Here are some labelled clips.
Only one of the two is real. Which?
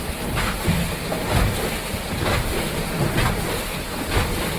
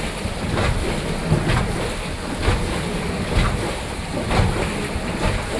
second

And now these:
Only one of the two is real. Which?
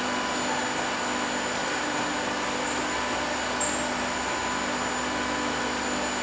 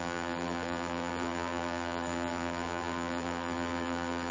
first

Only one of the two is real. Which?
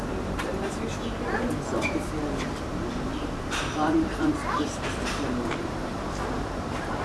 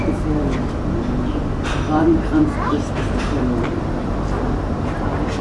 second